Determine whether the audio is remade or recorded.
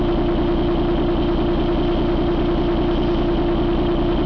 recorded